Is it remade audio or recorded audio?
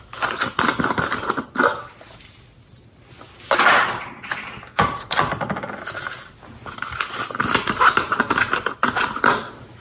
recorded